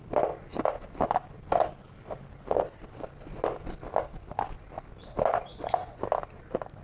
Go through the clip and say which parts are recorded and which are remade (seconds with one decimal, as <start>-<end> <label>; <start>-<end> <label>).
0.0-5.5 recorded; 5.5-6.0 remade; 6.0-6.8 recorded